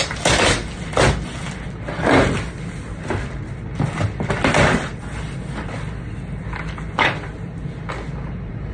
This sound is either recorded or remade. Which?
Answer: recorded